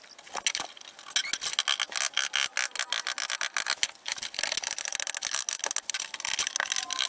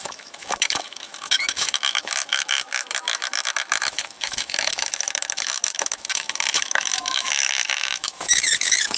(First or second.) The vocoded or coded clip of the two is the second